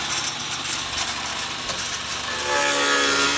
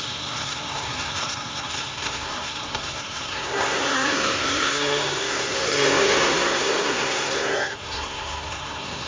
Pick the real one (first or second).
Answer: first